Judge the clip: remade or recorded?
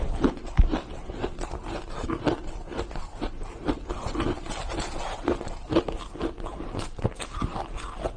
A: recorded